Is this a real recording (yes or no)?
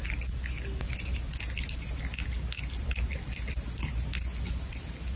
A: yes